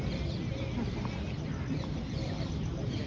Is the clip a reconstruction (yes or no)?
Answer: no